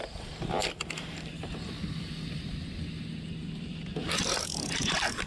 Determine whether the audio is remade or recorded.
recorded